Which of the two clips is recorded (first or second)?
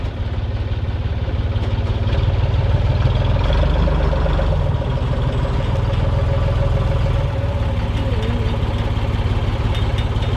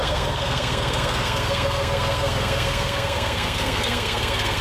first